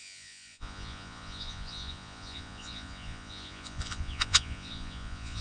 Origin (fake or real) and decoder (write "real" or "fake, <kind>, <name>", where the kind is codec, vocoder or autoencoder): fake, vocoder, Vocos